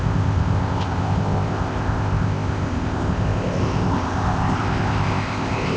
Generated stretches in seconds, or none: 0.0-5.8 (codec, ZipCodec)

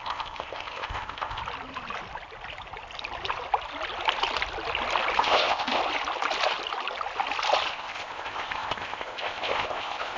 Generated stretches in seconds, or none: 0.0-1.4 (codec, ZipCodec); 5.2-5.8; 7.7-10.2